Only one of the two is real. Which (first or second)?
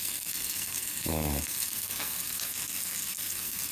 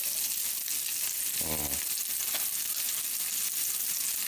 second